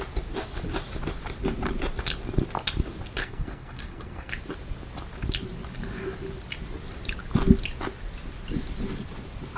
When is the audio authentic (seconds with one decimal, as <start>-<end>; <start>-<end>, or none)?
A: 0.0-3.2; 4.3-9.6